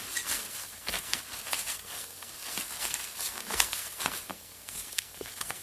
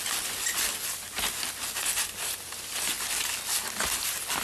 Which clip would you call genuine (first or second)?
second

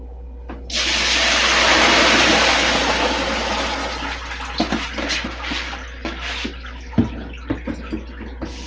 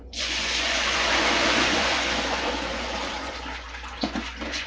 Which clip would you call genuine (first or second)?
first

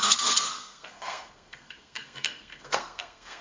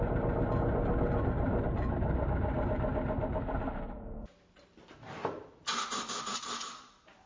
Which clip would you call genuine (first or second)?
second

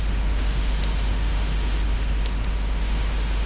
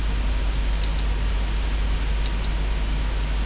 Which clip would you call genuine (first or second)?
second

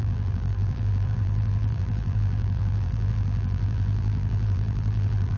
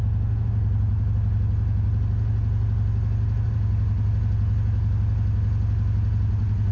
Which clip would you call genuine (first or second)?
second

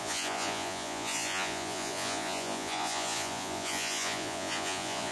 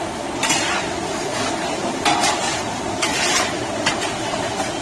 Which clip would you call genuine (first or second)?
second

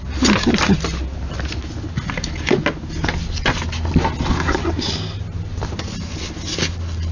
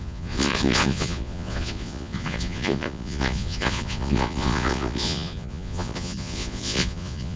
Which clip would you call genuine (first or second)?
first